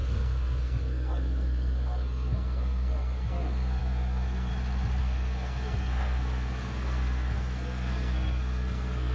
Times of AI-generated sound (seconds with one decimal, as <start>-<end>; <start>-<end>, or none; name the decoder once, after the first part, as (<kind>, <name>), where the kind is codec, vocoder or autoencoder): 0.0-4.5 (codec, SNAC); 5.0-9.1